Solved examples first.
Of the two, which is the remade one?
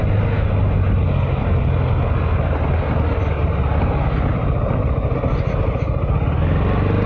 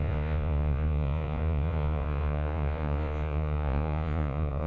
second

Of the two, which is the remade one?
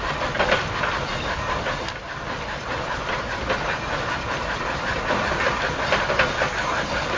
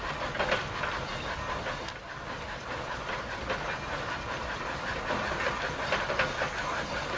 first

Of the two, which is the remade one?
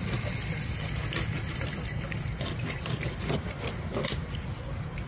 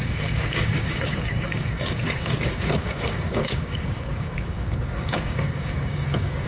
second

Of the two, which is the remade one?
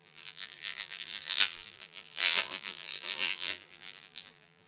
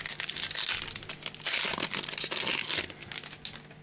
first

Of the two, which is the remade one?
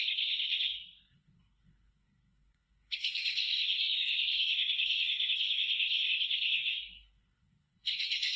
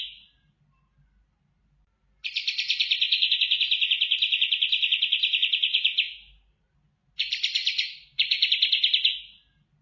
first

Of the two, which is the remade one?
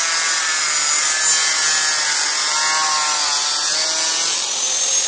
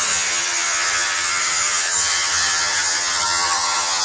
second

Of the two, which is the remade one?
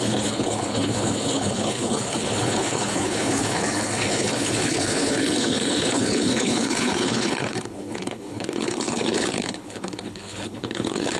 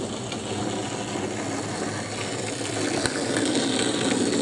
first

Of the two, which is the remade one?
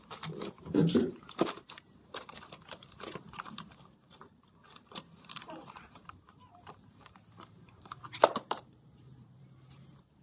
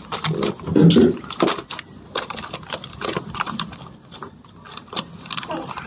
first